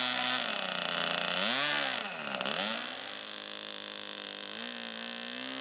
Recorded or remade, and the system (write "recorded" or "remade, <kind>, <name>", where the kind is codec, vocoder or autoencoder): recorded